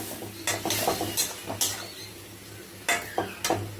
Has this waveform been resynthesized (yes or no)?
no